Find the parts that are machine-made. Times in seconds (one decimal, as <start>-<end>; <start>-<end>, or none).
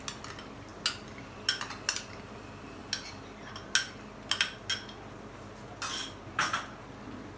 none